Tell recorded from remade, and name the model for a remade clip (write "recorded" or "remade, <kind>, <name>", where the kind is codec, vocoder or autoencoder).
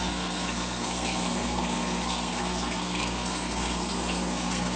remade, codec, SNAC